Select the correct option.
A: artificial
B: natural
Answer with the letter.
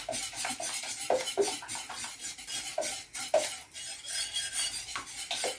B